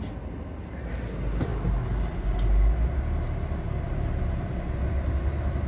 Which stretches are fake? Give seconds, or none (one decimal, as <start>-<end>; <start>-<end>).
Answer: none